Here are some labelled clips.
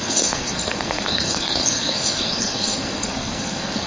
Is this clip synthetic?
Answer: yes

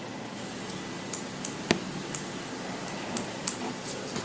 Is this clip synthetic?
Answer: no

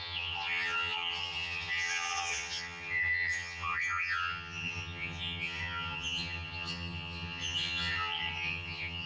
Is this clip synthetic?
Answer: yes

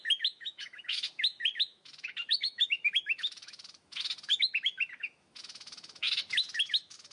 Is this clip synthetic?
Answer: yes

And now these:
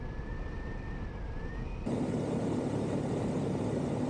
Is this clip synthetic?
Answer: no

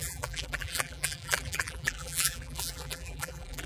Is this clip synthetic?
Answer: yes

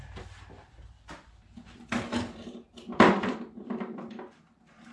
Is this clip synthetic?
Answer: yes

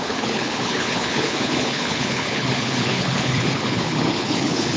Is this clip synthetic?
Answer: yes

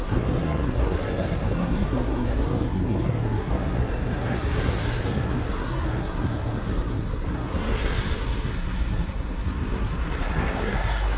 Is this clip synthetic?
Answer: yes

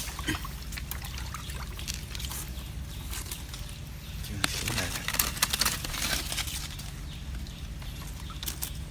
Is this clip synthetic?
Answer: no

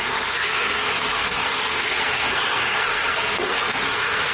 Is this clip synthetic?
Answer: yes